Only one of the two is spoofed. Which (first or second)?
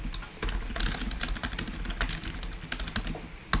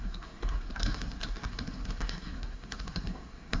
second